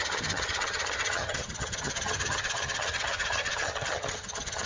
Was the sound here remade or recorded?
remade